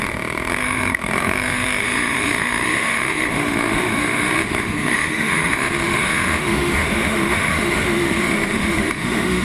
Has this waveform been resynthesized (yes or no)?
yes